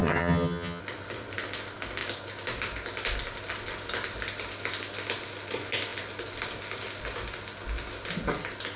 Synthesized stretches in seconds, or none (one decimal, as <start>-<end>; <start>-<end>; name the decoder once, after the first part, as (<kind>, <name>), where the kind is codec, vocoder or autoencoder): 0.0-0.8 (vocoder, HiFi-GAN)